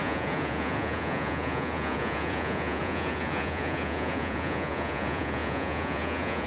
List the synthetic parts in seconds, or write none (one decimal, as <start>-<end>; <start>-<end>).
0.0-6.5